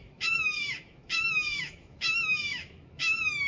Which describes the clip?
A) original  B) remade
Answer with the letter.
B